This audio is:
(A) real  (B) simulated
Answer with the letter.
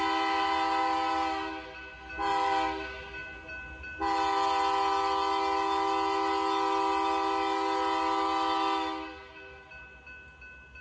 A